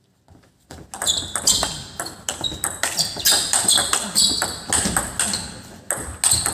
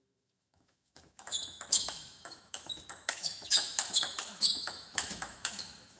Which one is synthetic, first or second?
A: second